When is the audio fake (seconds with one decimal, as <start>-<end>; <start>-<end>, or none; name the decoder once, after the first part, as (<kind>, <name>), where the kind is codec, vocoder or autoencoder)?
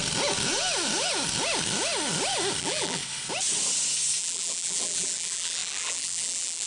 2.6-3.0 (vocoder, BigVGAN v2); 4.2-6.7